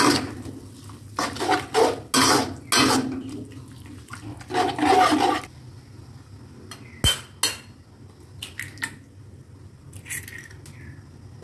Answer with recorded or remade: recorded